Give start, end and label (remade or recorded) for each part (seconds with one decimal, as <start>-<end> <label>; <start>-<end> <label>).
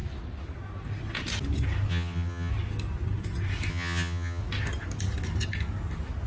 0.0-1.9 recorded; 1.9-2.5 remade; 2.5-3.7 recorded; 3.7-4.4 remade; 4.4-6.3 recorded